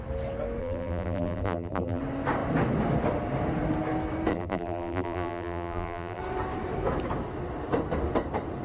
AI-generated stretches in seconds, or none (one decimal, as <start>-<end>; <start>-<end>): 0.6-2.0; 4.3-6.2